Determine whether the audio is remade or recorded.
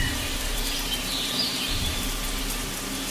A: remade